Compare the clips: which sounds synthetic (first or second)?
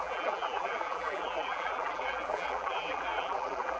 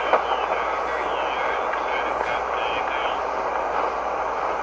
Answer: first